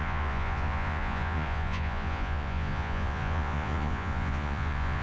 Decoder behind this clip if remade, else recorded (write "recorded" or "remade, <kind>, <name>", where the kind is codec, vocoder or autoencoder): remade, vocoder, Vocos